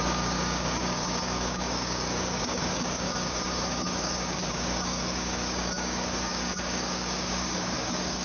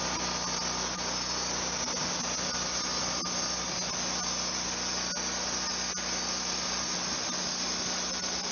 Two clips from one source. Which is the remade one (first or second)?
first